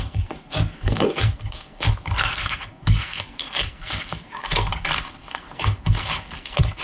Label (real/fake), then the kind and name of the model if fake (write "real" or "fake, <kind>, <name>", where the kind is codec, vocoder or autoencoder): fake, codec, SNAC